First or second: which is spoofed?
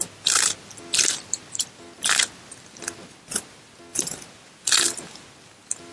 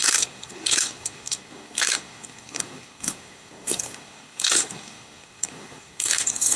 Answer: second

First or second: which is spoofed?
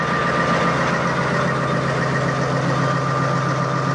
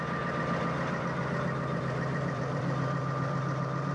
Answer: second